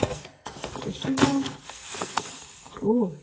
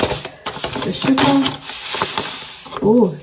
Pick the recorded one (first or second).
second